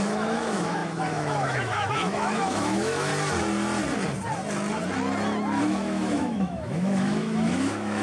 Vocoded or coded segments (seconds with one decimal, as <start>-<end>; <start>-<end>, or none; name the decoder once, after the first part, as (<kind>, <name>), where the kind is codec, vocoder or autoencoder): 0.0-3.1 (autoencoder, DAC-VAE); 5.6-8.0